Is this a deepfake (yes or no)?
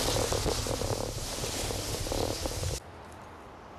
no